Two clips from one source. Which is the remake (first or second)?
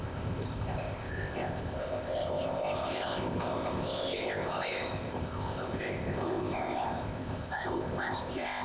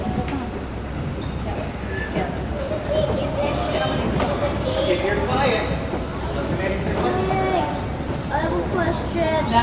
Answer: first